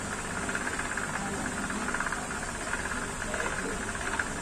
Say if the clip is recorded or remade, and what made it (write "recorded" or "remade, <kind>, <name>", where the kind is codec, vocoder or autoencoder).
recorded